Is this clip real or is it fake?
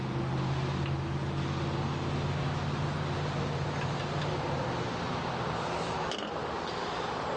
real